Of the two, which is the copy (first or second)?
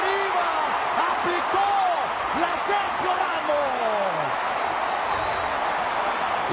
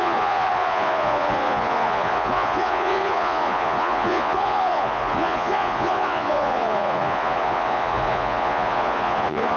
second